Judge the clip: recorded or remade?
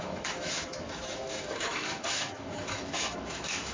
remade